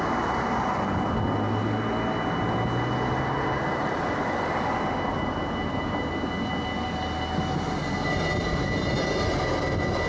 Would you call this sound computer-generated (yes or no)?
no